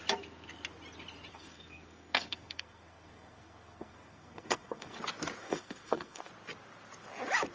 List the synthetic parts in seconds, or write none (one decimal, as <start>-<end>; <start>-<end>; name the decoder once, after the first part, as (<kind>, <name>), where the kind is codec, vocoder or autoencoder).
1.3-5.0 (codec, SNAC); 5.4-6.3